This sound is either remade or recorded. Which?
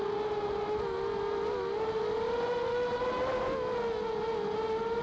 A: recorded